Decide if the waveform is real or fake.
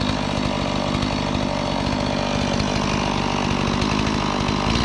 real